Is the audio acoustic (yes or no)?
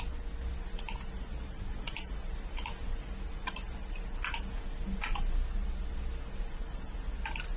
yes